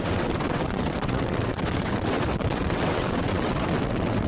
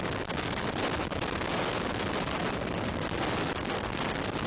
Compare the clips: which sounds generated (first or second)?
first